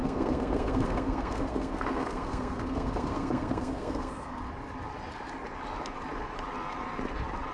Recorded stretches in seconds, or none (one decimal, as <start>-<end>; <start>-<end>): 4.4-7.5